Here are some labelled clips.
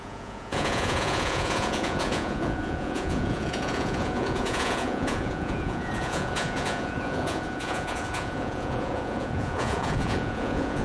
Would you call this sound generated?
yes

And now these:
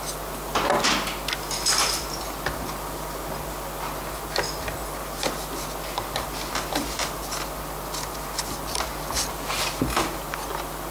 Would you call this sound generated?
no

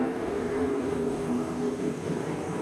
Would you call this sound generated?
yes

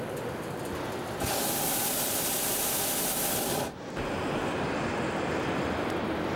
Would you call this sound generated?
no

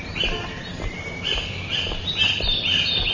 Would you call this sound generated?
yes